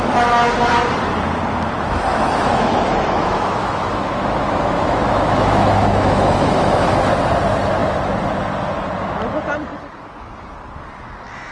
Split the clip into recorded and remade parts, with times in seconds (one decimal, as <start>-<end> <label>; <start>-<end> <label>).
0.0-2.1 recorded; 2.1-7.1 remade; 7.1-11.5 recorded